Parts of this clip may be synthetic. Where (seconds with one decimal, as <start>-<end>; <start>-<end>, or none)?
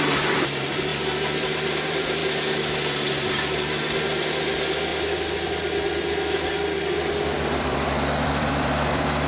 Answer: 0.0-0.9; 1.5-2.2; 3.2-4.9; 7.6-9.3